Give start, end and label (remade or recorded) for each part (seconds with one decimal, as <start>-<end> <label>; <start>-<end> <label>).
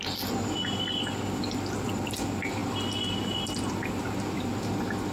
0.0-5.1 recorded